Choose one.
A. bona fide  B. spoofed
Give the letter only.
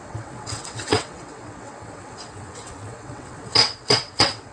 B